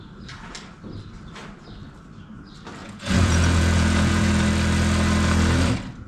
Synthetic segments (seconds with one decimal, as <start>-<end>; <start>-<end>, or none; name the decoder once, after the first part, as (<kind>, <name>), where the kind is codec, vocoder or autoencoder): 2.8-4.3 (vocoder, Vocos)